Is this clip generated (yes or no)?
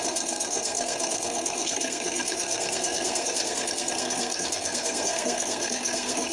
yes